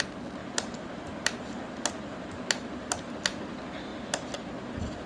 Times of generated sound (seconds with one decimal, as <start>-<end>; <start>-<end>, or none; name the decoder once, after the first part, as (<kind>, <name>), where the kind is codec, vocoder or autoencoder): none